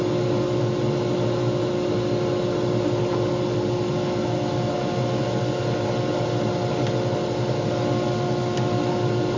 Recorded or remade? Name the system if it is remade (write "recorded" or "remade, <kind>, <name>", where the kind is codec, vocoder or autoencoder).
recorded